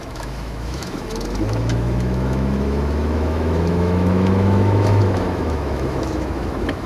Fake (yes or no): yes